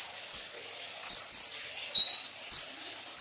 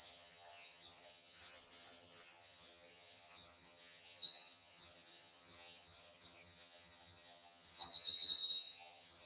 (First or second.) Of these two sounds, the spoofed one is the second